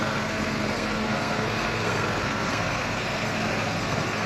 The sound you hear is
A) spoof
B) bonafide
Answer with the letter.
A